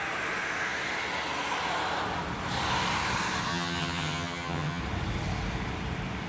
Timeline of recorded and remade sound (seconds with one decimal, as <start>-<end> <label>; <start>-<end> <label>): 0.0-3.5 recorded; 3.5-4.8 remade; 4.8-6.3 recorded